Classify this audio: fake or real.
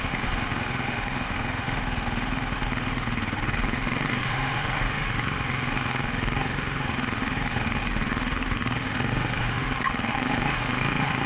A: fake